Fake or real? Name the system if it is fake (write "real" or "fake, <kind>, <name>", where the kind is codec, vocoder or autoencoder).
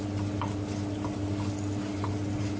real